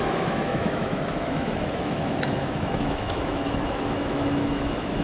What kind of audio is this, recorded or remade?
remade